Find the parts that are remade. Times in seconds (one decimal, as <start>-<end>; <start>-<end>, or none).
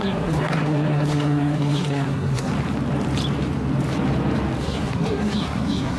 0.0-2.5; 4.6-6.0